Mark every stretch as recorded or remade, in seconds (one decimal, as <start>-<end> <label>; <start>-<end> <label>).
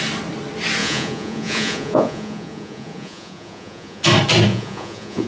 0.0-0.8 recorded; 0.8-4.0 remade; 4.0-4.5 recorded; 4.5-5.3 remade